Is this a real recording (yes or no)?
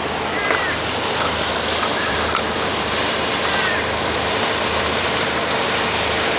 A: no